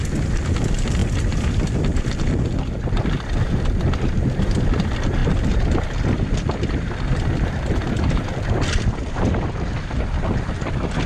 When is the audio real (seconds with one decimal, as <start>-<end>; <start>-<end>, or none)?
0.0-11.1